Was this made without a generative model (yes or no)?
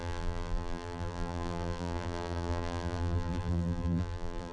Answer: no